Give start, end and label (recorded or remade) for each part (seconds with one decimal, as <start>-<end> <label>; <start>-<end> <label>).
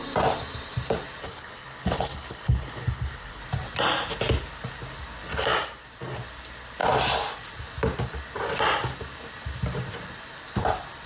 0.0-1.2 recorded; 1.2-3.4 remade; 3.4-11.1 recorded